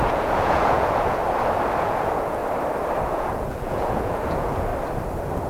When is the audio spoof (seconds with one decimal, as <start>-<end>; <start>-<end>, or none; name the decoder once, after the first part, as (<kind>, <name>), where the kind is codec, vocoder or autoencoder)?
0.0-1.2 (vocoder, Vocos); 1.8-2.4; 3.0-4.7